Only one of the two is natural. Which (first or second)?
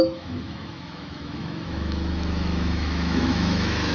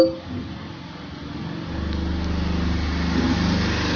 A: second